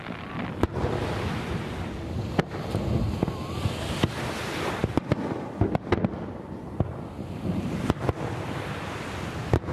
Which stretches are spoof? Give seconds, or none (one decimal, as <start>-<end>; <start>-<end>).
none